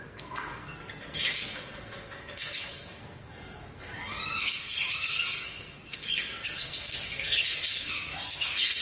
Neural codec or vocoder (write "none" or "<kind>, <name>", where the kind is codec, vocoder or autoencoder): codec, SNAC